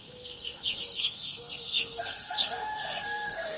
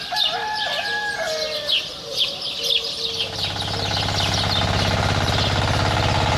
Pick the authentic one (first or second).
second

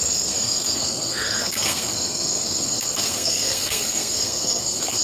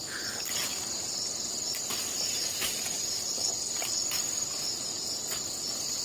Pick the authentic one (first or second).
second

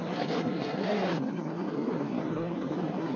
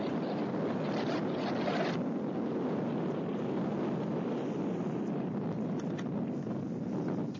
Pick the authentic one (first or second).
second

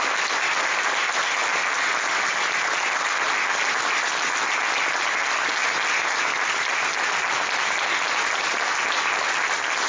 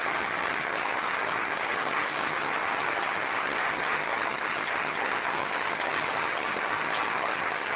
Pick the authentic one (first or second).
first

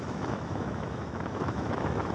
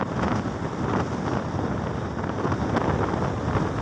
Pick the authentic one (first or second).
second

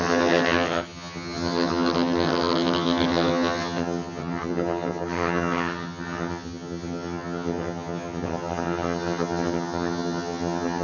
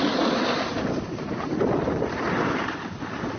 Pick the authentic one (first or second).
second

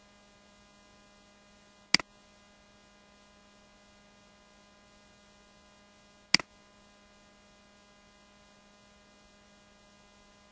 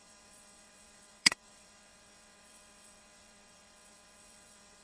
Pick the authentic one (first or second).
first